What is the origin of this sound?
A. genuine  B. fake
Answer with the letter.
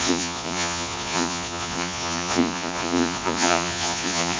B